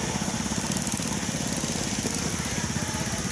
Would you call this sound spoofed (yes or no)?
no